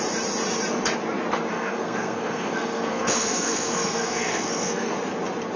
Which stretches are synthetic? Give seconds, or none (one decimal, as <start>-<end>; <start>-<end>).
1.5-4.9